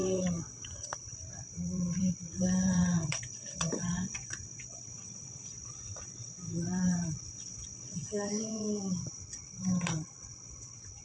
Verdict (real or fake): fake